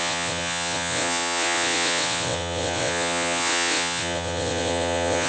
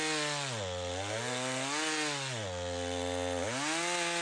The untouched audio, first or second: second